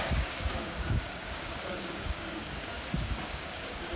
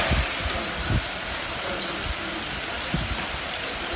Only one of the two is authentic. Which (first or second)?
second